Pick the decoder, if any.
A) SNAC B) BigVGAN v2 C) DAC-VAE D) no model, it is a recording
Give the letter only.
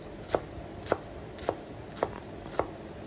D